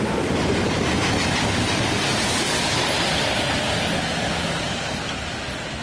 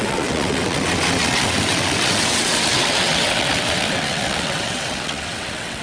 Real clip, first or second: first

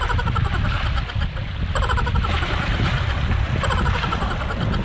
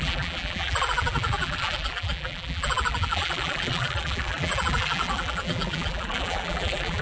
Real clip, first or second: first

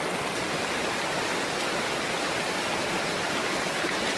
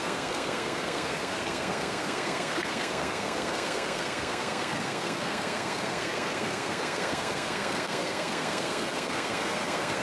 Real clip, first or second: first